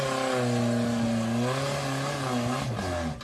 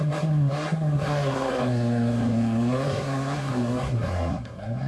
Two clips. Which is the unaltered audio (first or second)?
first